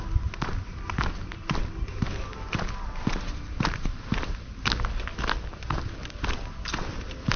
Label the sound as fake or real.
real